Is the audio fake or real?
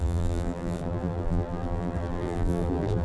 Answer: fake